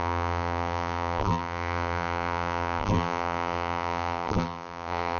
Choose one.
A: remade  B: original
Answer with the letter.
A